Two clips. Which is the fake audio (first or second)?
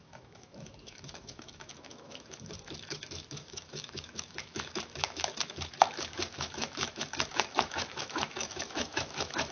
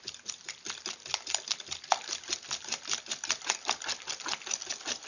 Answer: first